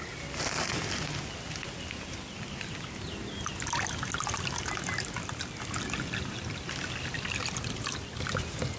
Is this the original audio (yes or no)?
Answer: yes